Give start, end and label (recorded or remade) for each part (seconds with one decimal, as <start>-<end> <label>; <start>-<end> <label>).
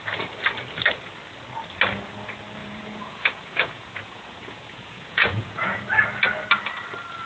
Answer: 0.0-2.6 recorded; 2.6-5.8 remade; 5.8-7.3 recorded